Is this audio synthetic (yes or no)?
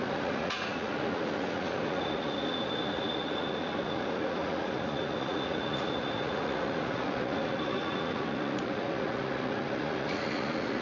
yes